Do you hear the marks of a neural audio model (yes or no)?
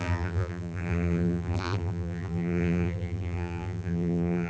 yes